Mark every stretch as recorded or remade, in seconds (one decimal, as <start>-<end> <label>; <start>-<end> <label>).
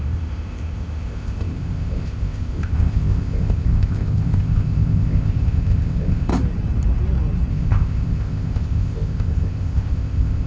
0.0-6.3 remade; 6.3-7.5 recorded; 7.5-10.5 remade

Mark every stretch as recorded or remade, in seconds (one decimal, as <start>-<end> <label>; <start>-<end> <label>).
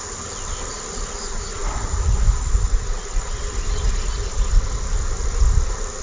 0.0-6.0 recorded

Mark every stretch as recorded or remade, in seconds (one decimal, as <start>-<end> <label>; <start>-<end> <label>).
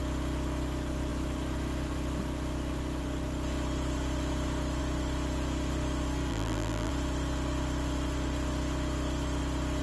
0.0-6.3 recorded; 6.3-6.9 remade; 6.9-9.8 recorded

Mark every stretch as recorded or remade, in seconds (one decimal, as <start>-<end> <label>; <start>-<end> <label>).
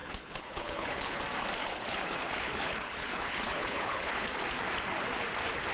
0.0-1.2 remade; 1.2-1.6 recorded; 1.6-4.3 remade; 4.3-5.7 recorded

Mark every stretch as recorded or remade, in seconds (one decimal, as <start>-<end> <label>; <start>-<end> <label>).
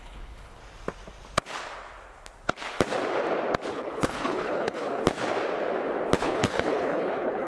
0.0-0.6 remade; 0.6-3.7 recorded; 3.7-5.0 remade; 5.0-6.2 recorded; 6.2-7.5 remade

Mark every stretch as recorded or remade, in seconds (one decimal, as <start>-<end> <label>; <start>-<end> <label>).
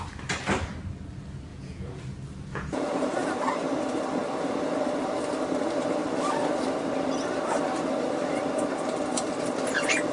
0.0-1.5 recorded; 1.5-2.0 remade; 2.0-2.5 recorded; 2.5-3.3 remade; 3.3-10.1 recorded